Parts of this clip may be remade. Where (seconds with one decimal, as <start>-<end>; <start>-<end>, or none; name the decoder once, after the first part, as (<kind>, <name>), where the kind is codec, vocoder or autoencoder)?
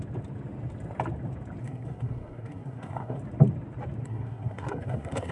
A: 1.6-3.2 (codec, SNAC); 4.0-5.3